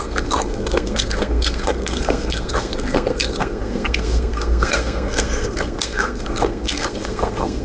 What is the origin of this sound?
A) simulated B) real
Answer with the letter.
A